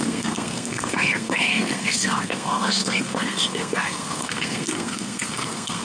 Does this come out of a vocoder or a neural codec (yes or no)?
yes